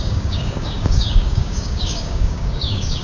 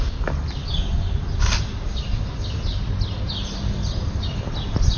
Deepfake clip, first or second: first